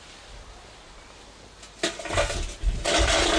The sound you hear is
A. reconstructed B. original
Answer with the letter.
B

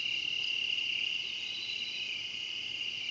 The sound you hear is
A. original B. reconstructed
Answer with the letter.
A